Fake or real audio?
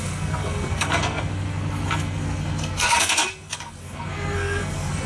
fake